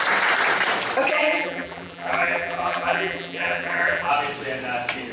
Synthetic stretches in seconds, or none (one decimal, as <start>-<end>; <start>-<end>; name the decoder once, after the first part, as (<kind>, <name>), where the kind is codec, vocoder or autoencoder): 1.1-4.1 (vocoder, BigVGAN v2)